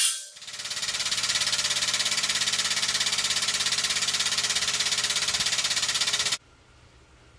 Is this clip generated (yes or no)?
no